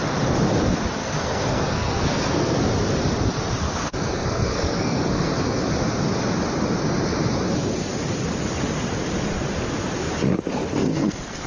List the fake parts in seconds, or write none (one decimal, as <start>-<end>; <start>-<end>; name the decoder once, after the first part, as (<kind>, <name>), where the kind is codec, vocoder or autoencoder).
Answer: 1.0-2.6 (codec, SNAC); 3.8-5.7; 10.8-11.5